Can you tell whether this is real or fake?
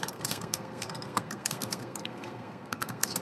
fake